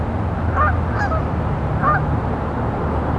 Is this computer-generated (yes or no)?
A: no